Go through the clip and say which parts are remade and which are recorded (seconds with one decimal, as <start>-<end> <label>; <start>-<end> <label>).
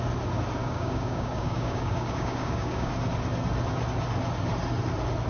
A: 0.0-0.6 recorded; 0.6-2.9 remade; 2.9-5.3 recorded